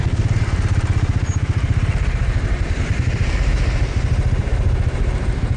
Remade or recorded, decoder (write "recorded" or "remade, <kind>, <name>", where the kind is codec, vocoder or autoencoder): remade, vocoder, BigVGAN v2